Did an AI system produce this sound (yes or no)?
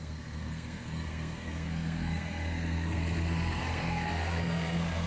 yes